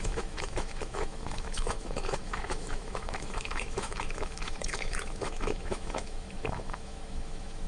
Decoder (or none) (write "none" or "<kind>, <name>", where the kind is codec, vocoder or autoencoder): autoencoder, DAC-VAE